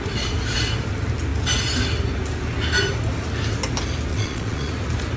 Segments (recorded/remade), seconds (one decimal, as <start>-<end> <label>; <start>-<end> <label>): 0.0-4.1 recorded; 4.1-4.7 remade; 4.7-5.2 recorded